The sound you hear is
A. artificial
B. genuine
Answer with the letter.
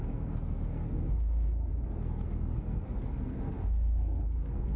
A